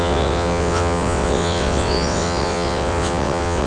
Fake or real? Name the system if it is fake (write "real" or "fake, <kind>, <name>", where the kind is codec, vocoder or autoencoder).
fake, vocoder, WaveNeXt